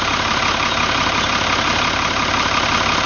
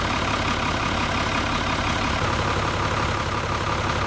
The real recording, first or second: second